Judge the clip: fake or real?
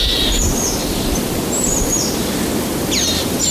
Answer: fake